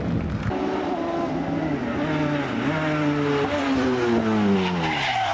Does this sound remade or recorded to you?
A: recorded